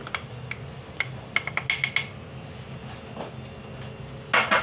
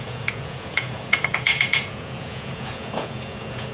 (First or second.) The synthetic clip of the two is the second